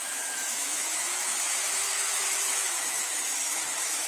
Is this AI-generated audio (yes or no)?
yes